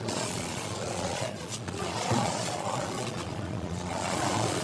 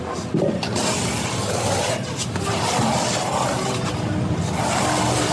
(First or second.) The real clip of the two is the second